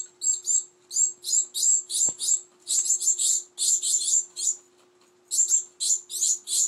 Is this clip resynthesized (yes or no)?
no